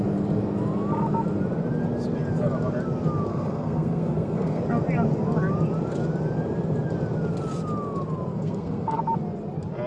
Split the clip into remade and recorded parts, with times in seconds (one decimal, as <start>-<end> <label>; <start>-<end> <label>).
0.0-3.3 recorded; 3.3-4.6 remade; 4.6-8.3 recorded; 8.3-9.0 remade; 9.0-9.9 recorded